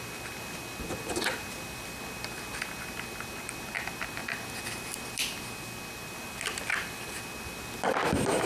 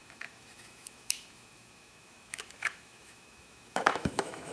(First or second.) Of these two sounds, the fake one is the second